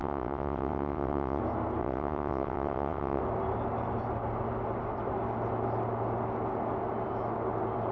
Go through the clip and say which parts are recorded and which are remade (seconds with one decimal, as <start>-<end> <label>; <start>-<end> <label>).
0.0-1.4 remade; 1.4-1.8 recorded; 1.8-3.2 remade; 3.2-7.9 recorded